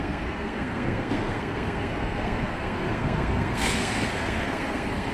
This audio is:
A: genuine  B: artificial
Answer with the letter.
B